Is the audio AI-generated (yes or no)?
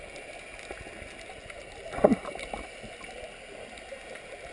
no